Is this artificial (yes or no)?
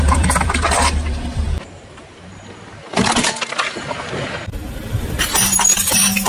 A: yes